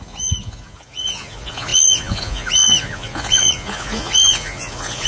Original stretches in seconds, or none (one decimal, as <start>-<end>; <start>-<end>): none

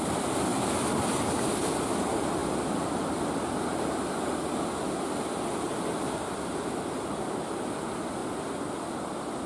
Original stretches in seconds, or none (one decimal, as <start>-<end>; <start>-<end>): 0.0-9.5